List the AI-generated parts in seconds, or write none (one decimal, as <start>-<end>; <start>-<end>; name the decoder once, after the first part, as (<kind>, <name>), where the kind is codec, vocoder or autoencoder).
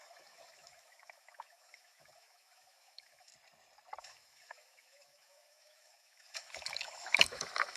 0.0-3.3 (autoencoder, DAC-VAE); 4.0-7.8